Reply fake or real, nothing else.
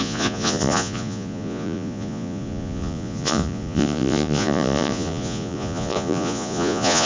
fake